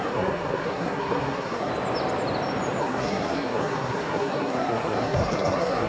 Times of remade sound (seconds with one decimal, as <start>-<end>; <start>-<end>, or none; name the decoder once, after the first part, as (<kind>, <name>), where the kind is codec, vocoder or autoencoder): 0.0-1.7 (codec, SNAC); 2.8-5.9

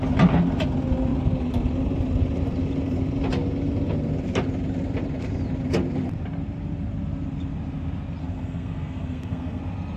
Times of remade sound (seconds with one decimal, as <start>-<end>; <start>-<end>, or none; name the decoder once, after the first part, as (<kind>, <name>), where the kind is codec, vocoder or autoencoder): 8.2-9.6 (codec, SNAC)

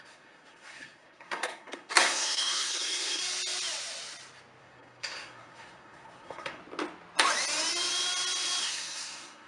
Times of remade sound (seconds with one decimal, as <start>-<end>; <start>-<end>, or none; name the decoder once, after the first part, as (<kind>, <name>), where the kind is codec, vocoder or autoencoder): 0.0-3.2 (codec, SNAC); 4.6-6.6; 8.6-9.5